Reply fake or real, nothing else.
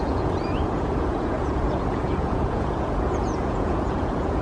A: fake